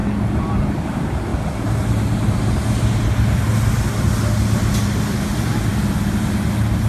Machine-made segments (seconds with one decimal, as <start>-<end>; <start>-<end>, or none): none